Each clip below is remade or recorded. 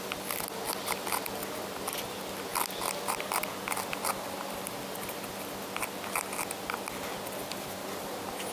recorded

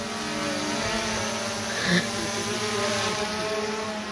recorded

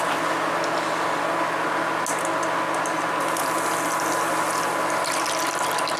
recorded